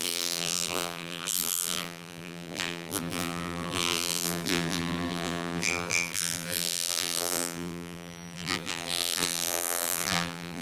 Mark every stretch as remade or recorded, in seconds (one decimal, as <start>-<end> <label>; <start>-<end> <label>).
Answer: 0.0-10.6 remade